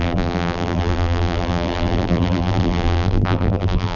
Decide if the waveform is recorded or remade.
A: remade